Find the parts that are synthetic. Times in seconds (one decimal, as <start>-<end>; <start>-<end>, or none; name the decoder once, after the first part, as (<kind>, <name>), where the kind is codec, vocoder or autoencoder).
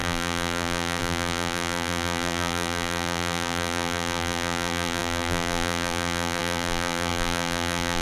0.0-8.0 (vocoder, BigVGAN v2)